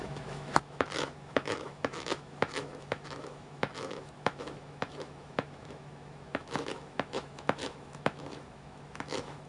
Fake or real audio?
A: fake